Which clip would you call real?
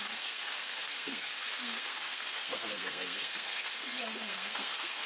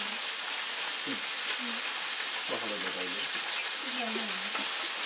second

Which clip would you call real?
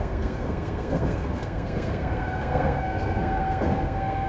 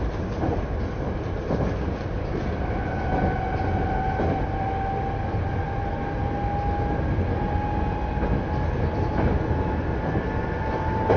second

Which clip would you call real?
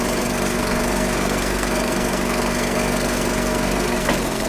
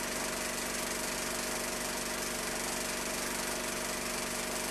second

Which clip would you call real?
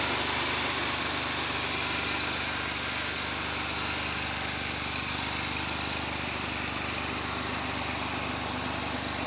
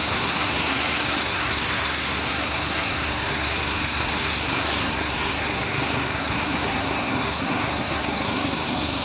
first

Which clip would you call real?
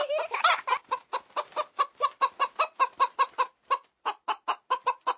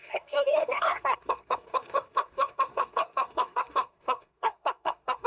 first